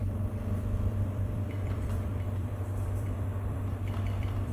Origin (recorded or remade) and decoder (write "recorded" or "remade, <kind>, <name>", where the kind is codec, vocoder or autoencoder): remade, vocoder, BigVGAN v2